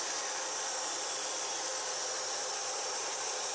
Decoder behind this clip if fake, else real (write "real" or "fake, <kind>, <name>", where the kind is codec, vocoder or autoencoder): real